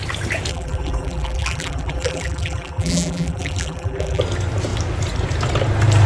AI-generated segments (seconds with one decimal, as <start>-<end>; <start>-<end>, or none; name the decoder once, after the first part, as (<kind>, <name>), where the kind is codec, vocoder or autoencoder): 0.5-4.2 (vocoder, BigVGAN v2)

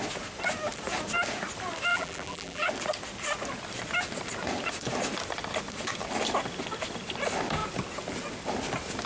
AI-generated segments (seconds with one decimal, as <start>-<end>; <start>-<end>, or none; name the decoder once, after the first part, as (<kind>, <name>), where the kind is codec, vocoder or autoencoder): 1.9-2.7 (vocoder, BigVGAN v2)

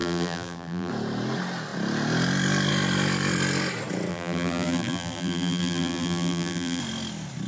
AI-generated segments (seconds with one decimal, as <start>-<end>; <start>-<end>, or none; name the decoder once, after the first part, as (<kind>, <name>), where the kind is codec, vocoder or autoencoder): 0.0-0.9 (vocoder, BigVGAN v2); 4.1-6.8